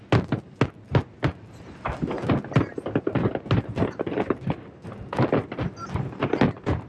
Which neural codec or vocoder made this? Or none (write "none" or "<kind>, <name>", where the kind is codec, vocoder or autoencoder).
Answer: none